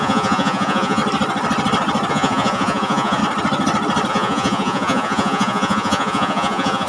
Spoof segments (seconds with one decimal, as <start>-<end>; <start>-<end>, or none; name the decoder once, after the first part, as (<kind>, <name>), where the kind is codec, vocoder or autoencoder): 0.0-1.0 (vocoder, Vocos); 2.1-3.2; 4.1-6.9